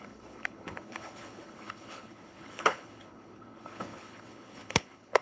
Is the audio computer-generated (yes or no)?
yes